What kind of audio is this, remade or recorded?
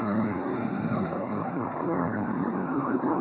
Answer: remade